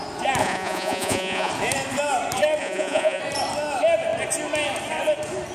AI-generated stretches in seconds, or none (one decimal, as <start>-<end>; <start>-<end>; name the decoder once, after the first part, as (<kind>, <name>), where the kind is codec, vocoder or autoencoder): 0.4-1.5 (vocoder, Vocos); 2.6-3.2